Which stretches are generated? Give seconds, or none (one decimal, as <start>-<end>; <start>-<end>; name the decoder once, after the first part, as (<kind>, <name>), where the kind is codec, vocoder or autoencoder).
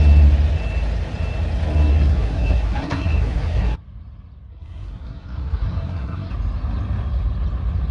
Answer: 1.9-3.8 (codec, SNAC); 4.5-6.3